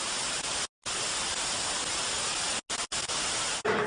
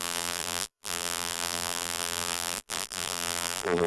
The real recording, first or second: first